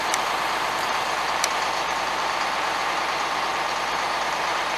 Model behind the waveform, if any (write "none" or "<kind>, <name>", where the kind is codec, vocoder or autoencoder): vocoder, BigVGAN v2